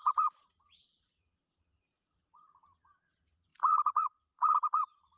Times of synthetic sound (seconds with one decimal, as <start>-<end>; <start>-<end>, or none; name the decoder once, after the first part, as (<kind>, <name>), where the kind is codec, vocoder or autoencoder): 0.0-5.2 (vocoder, Vocos)